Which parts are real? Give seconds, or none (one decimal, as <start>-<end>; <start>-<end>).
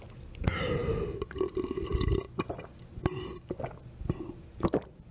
0.0-5.1